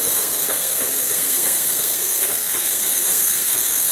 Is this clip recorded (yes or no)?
no